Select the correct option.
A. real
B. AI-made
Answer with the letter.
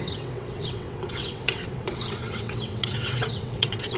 B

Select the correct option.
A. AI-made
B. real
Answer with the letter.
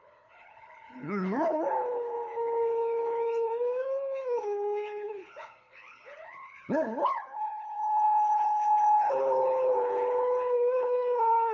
A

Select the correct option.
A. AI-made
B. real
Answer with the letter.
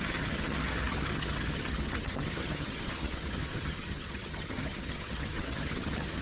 A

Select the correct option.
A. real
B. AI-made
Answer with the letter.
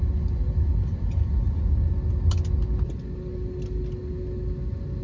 A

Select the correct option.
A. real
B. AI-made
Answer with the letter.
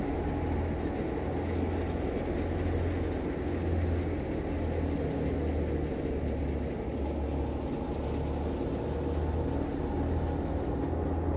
A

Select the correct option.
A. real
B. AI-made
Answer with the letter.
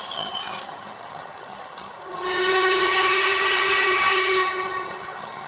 B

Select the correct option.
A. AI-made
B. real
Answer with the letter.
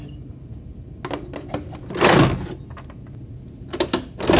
B